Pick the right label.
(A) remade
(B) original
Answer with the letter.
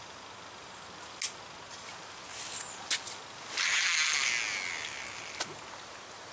B